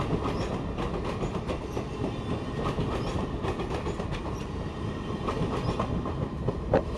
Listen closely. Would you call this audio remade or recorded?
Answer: recorded